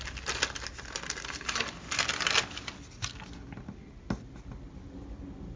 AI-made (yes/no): no